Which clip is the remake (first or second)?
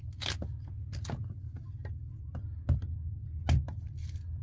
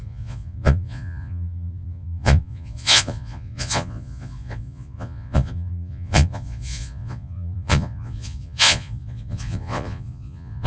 second